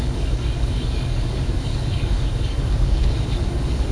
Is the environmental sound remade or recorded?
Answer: remade